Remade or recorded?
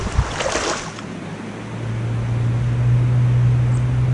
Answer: recorded